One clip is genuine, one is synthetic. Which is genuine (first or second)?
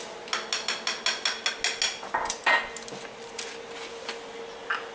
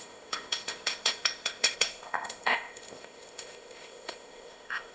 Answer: first